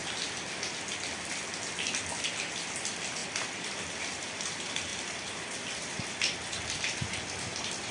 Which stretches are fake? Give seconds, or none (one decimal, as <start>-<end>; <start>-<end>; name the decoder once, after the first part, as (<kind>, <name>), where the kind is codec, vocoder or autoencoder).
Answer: 2.4-4.9 (vocoder, BigVGAN v2); 5.8-7.9